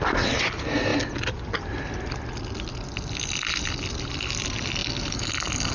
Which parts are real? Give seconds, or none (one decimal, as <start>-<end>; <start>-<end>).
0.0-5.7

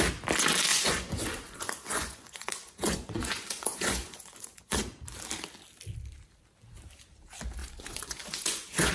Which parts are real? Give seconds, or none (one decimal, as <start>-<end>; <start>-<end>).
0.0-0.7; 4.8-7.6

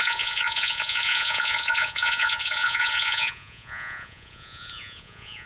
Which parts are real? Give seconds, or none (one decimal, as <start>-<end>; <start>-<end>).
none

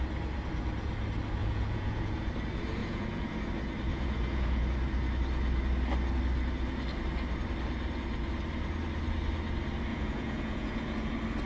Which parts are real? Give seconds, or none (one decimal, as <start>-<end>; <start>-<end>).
0.0-1.4; 2.3-2.8; 3.5-3.9; 4.6-9.9; 11.1-11.5